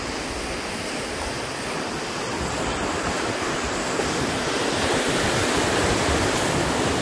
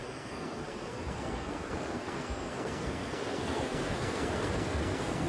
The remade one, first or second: second